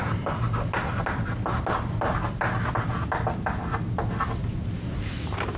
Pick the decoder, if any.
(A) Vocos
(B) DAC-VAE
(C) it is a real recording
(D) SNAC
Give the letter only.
C